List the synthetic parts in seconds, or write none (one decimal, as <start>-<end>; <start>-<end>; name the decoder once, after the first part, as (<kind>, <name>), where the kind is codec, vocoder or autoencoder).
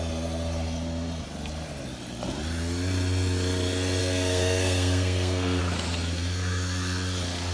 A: 4.0-5.6 (codec, SNAC)